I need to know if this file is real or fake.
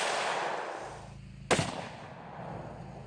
real